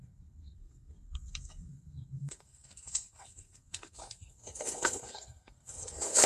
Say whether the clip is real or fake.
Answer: fake